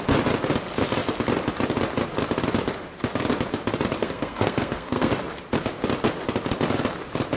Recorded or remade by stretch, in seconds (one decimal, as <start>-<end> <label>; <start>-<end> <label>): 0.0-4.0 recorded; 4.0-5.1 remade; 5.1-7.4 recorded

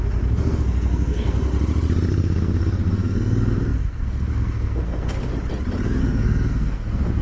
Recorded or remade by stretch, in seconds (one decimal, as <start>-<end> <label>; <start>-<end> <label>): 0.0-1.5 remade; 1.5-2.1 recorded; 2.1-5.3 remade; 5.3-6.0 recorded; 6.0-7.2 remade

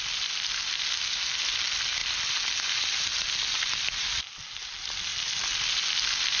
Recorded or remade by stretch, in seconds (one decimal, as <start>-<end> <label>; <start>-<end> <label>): 0.0-6.4 recorded